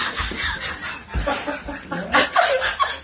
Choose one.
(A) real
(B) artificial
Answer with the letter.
A